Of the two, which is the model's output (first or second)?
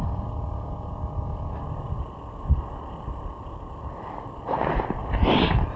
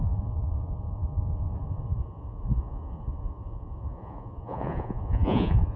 second